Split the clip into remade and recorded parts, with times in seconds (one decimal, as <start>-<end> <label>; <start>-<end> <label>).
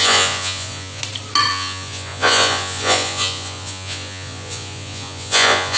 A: 0.0-1.0 remade; 1.0-1.5 recorded; 1.5-5.8 remade